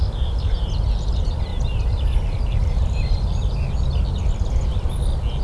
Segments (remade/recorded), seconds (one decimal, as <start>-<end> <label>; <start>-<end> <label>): 0.0-1.5 recorded; 1.5-3.6 remade; 3.6-5.4 recorded